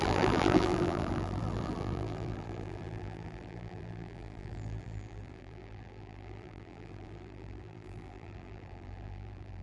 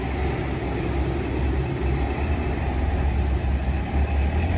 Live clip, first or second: second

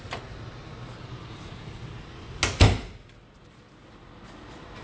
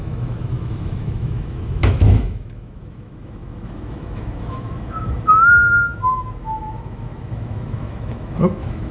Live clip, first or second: first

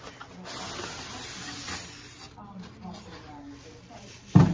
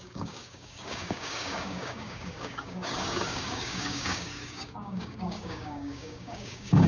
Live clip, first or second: first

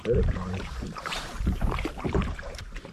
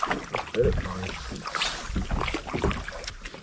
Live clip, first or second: second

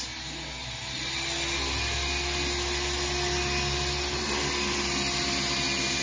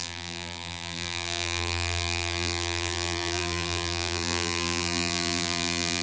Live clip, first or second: first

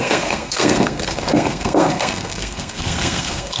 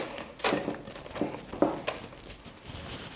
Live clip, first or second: second